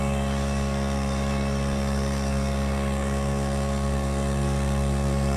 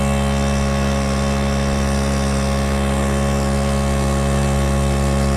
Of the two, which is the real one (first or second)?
second